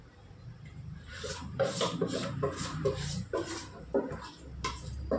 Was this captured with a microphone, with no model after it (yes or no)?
no